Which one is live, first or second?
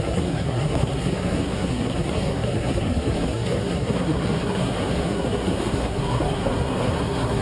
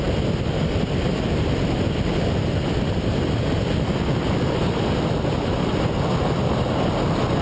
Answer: second